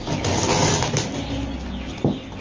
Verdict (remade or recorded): recorded